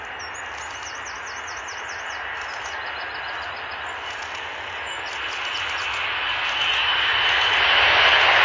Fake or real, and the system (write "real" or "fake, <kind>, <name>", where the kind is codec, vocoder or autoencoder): real